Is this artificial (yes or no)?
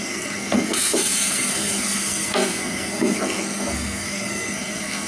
yes